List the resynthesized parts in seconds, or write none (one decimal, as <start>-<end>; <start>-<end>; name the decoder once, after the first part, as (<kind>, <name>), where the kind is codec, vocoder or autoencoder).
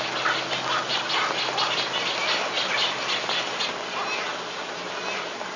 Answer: none